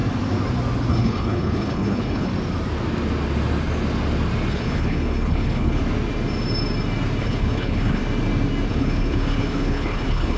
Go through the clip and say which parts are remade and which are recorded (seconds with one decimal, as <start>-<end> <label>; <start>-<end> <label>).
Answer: 0.0-0.9 recorded; 0.9-2.3 remade; 2.3-4.5 recorded; 4.5-5.8 remade; 5.8-7.2 recorded; 7.2-8.0 remade; 8.0-8.7 recorded; 8.7-10.4 remade